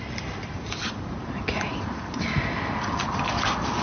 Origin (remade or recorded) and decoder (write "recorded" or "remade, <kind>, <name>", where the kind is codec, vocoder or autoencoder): recorded